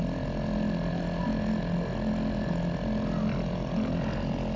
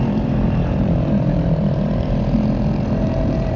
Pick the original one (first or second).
first